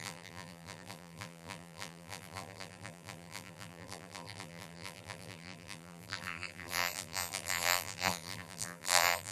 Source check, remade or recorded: remade